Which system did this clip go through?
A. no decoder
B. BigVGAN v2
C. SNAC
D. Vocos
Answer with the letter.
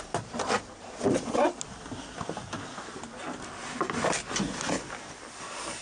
A